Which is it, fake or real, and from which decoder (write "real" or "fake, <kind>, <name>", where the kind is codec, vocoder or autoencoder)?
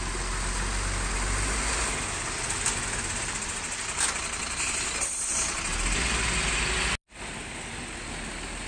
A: real